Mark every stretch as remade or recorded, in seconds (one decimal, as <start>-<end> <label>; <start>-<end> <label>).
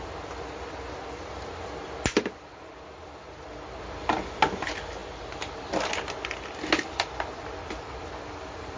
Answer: 0.0-8.8 recorded